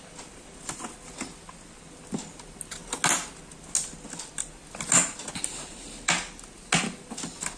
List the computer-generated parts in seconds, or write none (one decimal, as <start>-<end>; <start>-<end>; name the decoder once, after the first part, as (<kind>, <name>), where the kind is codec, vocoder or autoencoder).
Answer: none